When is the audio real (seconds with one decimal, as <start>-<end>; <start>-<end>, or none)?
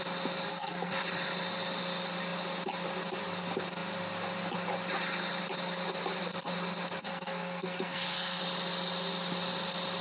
0.0-0.5; 1.0-7.0; 8.4-10.0